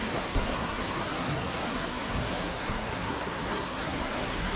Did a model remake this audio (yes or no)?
yes